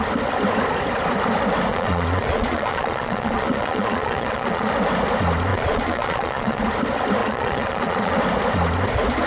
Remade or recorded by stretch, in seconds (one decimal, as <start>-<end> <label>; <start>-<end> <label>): 0.0-1.7 recorded; 1.7-4.7 remade; 4.7-5.5 recorded; 5.5-6.6 remade; 6.6-7.2 recorded; 7.2-8.2 remade; 8.2-9.3 recorded